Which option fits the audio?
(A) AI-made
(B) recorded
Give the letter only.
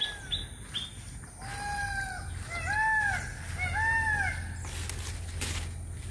B